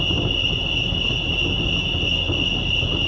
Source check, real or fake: real